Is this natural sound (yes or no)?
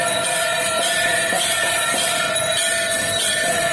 no